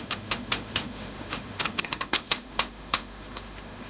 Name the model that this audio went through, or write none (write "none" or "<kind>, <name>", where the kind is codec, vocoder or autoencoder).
autoencoder, DAC-VAE